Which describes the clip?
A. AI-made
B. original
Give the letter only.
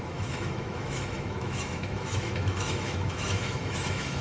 A